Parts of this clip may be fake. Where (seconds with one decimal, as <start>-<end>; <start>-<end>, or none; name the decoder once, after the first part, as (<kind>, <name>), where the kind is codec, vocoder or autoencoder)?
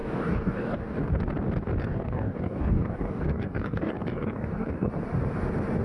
0.0-1.1 (codec, DAC); 1.8-4.9